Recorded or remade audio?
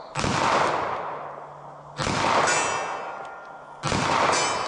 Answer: recorded